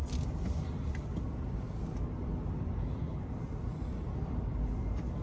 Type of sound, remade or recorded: recorded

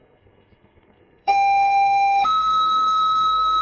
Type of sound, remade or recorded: remade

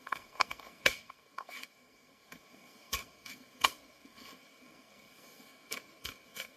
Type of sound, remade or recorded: remade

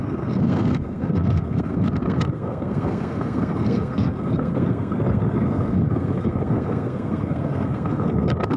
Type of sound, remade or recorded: remade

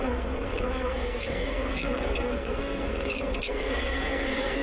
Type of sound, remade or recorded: remade